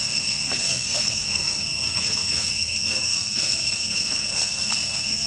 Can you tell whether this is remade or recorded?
remade